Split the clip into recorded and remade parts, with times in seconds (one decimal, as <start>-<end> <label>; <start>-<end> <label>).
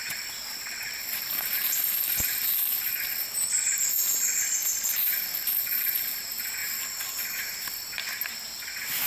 0.0-9.1 recorded